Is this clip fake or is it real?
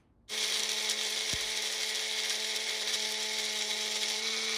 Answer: real